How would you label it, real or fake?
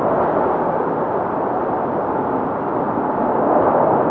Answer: real